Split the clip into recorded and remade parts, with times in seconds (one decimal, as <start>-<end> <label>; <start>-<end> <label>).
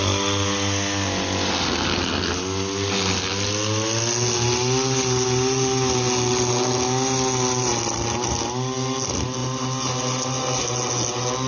0.0-11.5 recorded